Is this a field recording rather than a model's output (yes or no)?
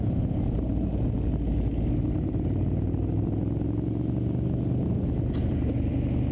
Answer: yes